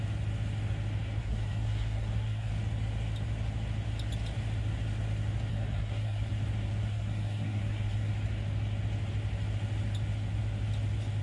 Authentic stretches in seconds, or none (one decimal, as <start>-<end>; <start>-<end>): 0.0-1.2; 2.5-5.5; 6.3-6.9; 8.1-11.2